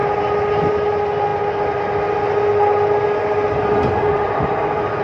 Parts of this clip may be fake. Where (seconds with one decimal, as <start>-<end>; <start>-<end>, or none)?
none